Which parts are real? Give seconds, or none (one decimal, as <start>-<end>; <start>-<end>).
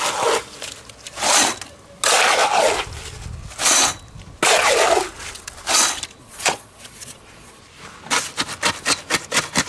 0.0-6.2; 7.6-9.7